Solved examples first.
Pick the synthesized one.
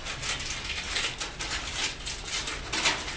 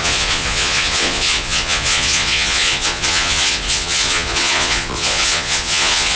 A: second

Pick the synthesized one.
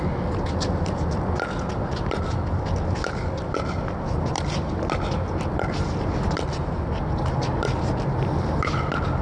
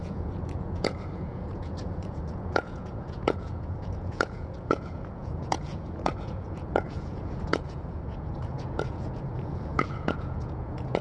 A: second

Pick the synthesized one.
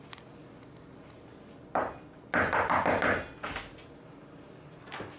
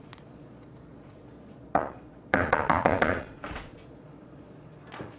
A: second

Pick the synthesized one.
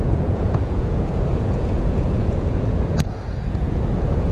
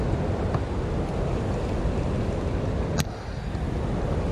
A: first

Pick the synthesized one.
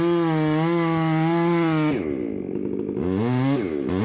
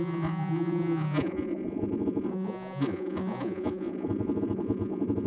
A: second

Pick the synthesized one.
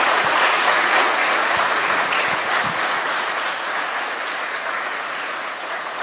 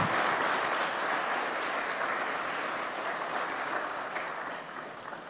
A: first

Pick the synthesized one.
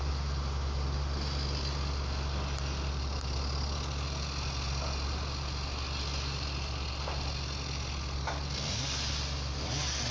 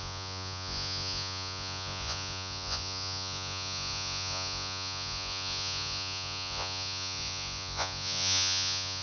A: second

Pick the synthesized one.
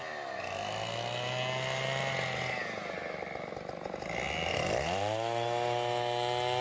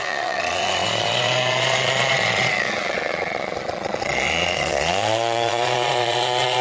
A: second